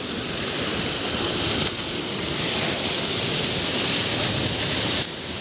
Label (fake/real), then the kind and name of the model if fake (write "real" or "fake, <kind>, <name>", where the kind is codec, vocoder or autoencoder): real